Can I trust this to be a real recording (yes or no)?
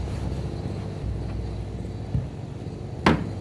yes